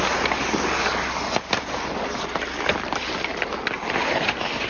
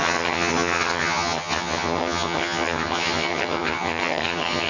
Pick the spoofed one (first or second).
second